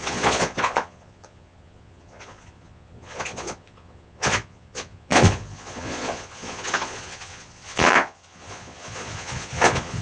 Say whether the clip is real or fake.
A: fake